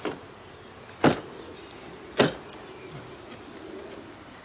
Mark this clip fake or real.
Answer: real